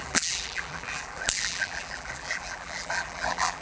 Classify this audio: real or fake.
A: fake